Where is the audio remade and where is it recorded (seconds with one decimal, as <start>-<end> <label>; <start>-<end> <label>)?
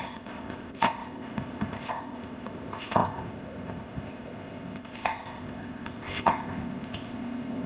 0.0-7.7 remade